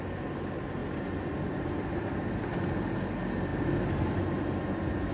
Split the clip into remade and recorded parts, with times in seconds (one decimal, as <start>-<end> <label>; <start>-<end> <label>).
0.0-5.1 recorded